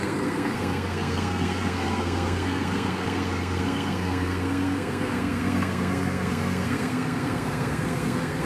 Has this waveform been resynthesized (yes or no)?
yes